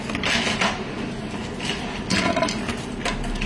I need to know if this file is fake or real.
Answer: real